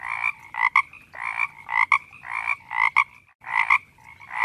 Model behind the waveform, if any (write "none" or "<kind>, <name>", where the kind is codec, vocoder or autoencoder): none